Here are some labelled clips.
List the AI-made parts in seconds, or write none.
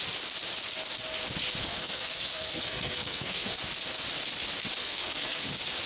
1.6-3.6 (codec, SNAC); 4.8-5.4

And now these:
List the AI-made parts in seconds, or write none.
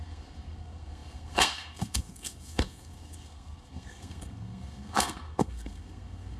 0.0-6.4 (codec, SNAC)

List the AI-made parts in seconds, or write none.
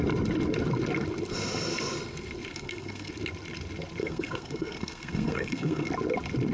2.5-3.1 (codec, SNAC); 4.0-5.9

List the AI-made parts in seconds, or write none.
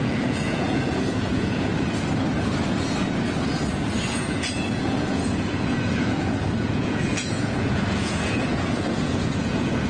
0.0-1.7 (vocoder, Vocos); 4.1-9.9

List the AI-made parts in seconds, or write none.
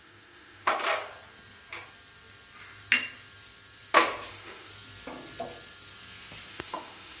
0.0-0.7 (autoencoder, DAC-VAE); 4.3-4.7; 6.5-7.2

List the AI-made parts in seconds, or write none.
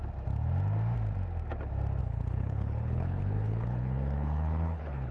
2.0-5.1 (codec, HILCodec)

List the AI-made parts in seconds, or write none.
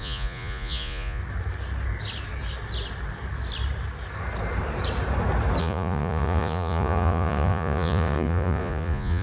0.0-1.2 (vocoder, Vocos); 5.6-9.2